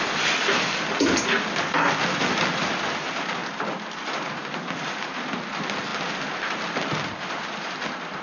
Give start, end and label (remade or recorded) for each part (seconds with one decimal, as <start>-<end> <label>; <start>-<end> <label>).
0.0-8.2 recorded